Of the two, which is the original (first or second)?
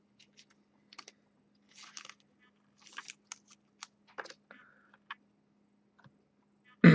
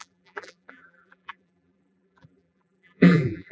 first